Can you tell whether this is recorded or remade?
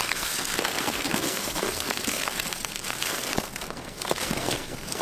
remade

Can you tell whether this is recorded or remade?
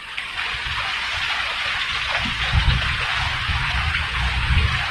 remade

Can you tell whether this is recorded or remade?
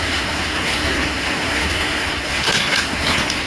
remade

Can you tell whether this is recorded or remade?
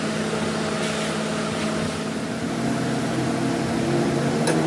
recorded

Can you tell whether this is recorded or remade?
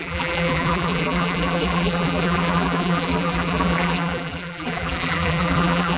remade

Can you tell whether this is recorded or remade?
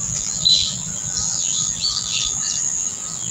remade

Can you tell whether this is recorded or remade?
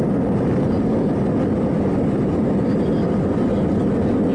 recorded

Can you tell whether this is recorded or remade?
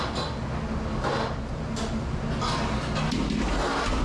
recorded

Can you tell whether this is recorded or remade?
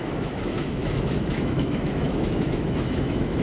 remade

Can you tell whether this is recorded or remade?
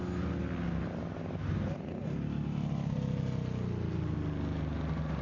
recorded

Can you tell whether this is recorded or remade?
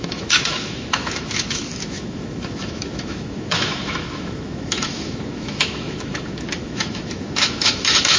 remade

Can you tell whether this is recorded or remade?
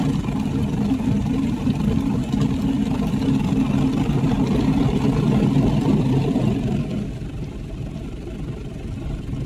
recorded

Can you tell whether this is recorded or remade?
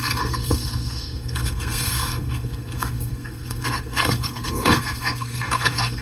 remade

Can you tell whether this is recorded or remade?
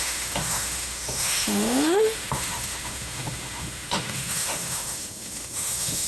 remade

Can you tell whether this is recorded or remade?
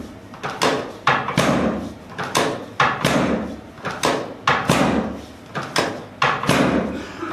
recorded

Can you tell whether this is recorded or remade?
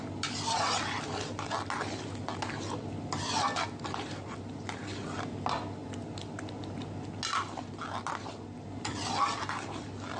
recorded